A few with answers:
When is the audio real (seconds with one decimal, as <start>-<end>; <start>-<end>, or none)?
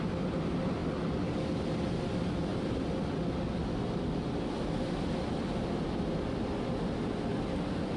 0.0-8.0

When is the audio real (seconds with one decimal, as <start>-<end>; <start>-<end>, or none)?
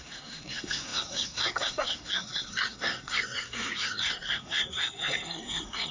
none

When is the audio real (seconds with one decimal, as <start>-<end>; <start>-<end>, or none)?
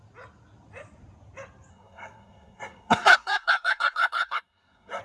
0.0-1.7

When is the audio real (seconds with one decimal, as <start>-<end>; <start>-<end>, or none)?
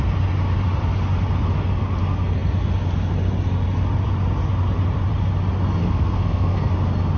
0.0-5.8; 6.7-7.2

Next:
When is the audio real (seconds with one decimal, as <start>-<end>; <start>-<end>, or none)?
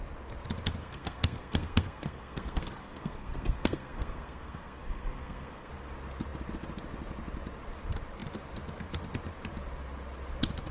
0.0-0.8; 5.7-10.7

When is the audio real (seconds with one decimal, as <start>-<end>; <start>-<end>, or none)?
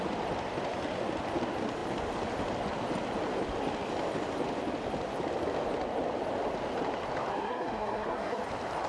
0.0-7.3; 8.4-8.9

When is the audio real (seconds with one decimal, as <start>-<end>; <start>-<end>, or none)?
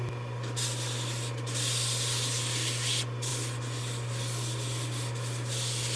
0.0-6.0